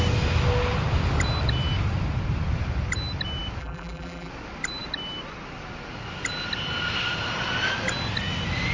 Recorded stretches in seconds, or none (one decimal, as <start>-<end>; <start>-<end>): 0.0-3.6; 4.3-8.7